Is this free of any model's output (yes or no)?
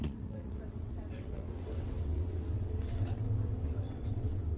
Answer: no